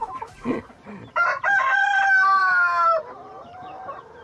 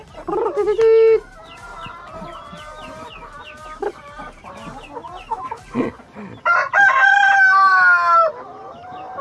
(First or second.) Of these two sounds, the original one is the second